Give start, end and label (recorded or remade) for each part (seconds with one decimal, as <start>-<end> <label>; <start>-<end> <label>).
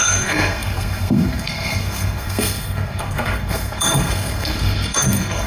0.0-5.5 remade